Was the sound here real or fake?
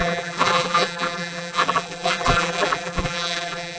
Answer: fake